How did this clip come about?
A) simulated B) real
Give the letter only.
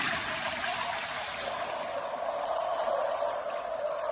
B